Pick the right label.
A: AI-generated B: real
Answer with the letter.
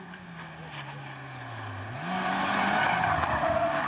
B